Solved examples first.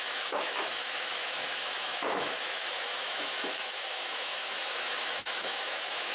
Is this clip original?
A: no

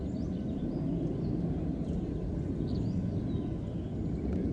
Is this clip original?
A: yes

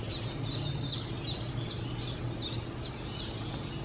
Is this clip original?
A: yes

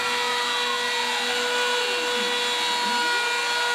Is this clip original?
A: yes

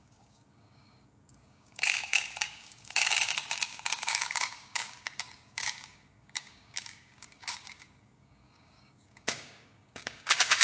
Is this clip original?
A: no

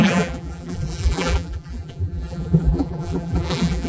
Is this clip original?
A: no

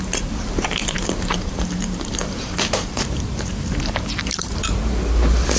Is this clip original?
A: no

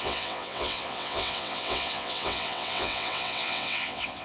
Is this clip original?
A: no